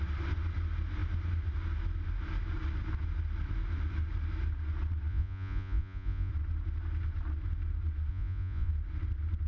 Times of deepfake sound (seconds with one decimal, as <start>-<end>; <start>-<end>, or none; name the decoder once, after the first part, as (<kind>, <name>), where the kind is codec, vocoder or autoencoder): 5.1-6.3 (vocoder, Vocos); 8.1-8.7